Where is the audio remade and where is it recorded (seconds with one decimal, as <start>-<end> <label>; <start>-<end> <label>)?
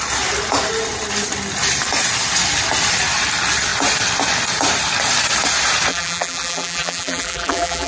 0.0-5.9 recorded; 5.9-7.9 remade